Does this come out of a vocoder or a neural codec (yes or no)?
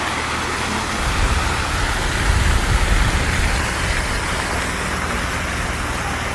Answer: no